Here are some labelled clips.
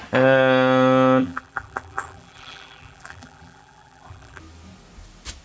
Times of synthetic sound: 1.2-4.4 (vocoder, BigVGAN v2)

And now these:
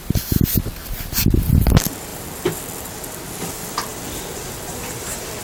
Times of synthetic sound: 0.8-1.4 (vocoder, BigVGAN v2); 2.1-2.9; 3.9-5.4